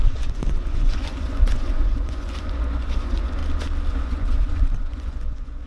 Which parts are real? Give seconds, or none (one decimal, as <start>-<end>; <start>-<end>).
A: 3.4-3.9